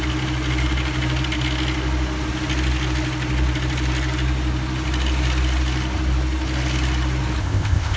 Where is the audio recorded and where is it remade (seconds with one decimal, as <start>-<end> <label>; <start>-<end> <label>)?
0.0-7.4 recorded; 7.4-8.0 remade